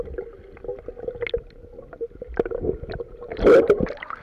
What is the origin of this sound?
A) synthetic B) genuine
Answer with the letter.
B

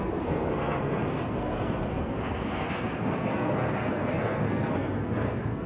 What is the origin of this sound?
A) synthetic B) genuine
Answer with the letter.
A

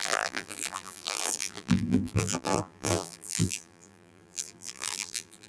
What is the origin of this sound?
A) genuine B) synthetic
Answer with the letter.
B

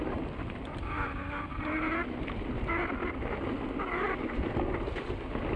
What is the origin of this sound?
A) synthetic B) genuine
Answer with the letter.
B